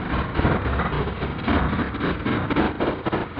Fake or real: real